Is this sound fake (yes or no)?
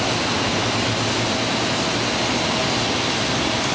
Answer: no